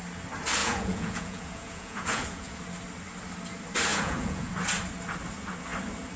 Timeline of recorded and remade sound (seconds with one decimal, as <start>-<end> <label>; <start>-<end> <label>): 0.0-0.6 recorded; 0.6-2.6 remade; 2.6-3.9 recorded; 3.9-4.5 remade; 4.5-6.2 recorded